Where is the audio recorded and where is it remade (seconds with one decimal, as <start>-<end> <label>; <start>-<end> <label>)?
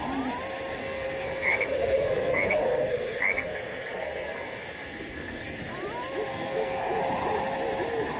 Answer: 0.0-0.8 recorded; 0.8-5.6 remade; 5.6-6.3 recorded; 6.3-7.0 remade; 7.0-8.2 recorded